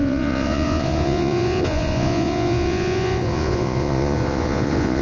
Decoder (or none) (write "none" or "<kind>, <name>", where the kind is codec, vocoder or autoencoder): vocoder, Vocos